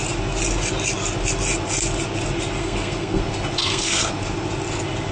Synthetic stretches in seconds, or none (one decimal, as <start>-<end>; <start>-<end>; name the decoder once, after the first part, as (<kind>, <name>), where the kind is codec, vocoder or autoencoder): 2.6-3.2 (codec, SNAC); 3.6-4.1